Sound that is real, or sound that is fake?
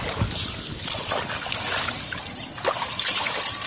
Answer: fake